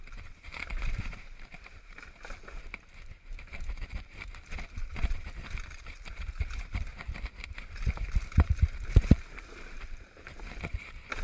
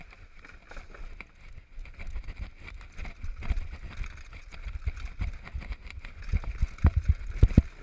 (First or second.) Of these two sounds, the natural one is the second